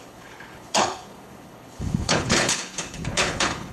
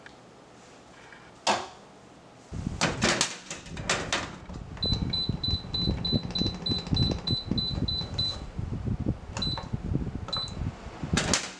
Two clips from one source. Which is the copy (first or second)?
first